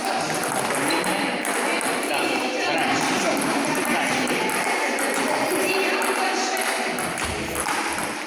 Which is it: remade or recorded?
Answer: recorded